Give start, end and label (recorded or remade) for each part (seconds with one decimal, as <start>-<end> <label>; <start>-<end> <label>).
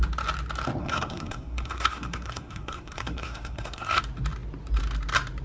0.0-0.8 recorded; 0.8-4.0 remade; 4.0-5.4 recorded